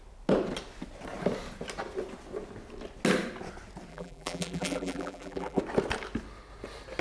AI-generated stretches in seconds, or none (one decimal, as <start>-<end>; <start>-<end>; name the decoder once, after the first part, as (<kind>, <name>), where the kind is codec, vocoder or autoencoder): 3.9-5.6 (vocoder, BigVGAN v2)